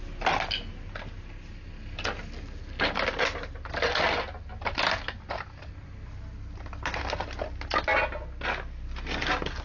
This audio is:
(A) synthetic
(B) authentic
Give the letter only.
B